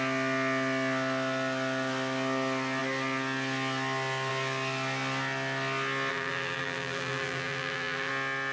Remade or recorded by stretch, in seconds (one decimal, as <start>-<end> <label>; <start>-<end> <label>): 0.0-6.1 recorded; 6.1-8.1 remade; 8.1-8.5 recorded